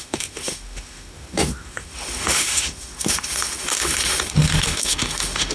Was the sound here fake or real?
fake